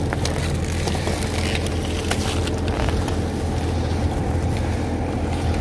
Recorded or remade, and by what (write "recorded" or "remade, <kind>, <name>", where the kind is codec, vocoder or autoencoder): recorded